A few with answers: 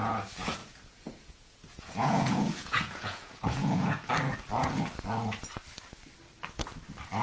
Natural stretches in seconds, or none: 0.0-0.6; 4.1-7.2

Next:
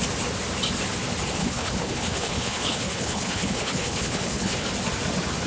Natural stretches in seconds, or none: 0.0-1.4; 4.7-5.5

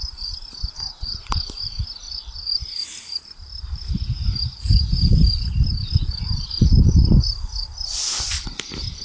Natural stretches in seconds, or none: 8.0-8.6

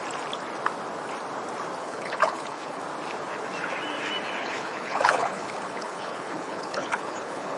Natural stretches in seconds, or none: 0.0-1.8; 2.8-4.4

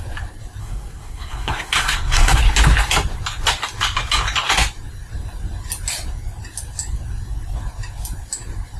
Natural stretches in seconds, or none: 0.0-0.6; 2.4-8.8

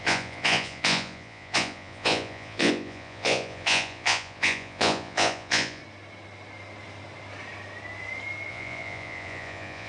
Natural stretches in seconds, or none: 5.8-8.5

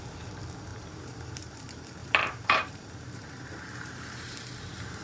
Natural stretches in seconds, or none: 0.0-0.7; 1.6-2.0